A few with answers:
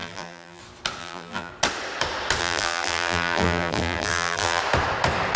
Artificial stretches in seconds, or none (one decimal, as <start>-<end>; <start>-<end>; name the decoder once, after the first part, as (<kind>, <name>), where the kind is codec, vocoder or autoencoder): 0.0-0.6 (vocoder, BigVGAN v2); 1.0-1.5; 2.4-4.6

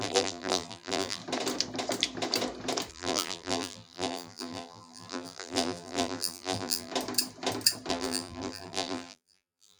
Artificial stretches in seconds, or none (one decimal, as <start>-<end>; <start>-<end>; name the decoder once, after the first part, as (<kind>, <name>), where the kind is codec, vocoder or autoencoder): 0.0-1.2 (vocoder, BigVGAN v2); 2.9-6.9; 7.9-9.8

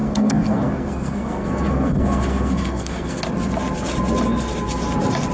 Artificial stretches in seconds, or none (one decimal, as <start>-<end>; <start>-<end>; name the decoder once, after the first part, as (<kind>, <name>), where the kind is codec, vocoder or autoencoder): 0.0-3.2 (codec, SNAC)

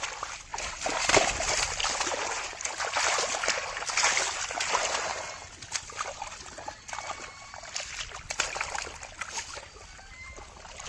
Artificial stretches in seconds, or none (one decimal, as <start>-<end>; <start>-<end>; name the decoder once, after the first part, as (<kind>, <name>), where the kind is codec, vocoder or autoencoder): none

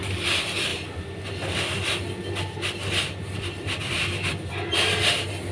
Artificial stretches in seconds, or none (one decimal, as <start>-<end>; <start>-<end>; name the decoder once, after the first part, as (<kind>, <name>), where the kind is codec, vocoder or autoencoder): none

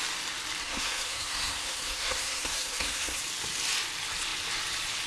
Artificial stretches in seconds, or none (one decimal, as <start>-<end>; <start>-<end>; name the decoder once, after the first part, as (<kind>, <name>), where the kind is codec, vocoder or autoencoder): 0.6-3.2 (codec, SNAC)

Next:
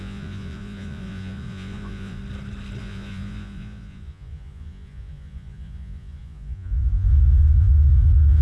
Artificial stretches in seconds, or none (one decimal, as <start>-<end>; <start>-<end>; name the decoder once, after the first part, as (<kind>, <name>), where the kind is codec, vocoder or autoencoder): 0.0-2.2 (vocoder, Vocos); 2.8-8.4

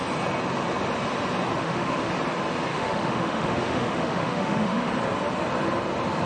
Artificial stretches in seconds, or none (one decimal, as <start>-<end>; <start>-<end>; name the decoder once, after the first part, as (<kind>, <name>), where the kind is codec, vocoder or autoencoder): 1.6-2.1 (autoencoder, DAC-VAE); 2.7-4.9